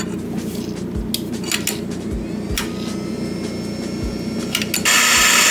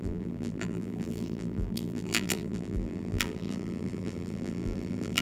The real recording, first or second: first